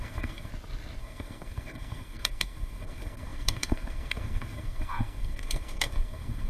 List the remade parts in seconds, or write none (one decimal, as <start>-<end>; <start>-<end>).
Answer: 0.0-0.5; 1.0-6.5